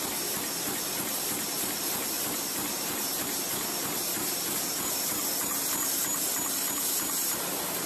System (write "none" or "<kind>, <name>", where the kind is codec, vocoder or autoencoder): none